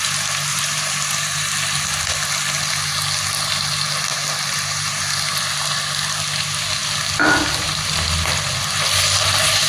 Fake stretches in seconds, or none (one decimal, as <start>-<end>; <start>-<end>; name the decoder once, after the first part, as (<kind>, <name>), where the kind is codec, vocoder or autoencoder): 0.5-1.4 (vocoder, BigVGAN v2); 4.1-5.0